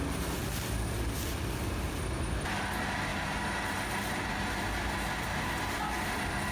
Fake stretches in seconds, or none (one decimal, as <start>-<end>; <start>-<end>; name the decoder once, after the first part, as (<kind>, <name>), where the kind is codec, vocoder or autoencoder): none